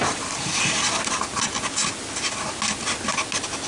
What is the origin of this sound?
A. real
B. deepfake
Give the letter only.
A